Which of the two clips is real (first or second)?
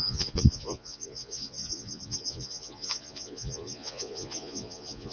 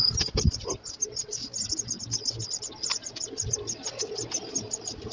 second